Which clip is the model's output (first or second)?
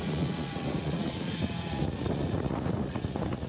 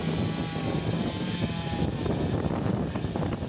first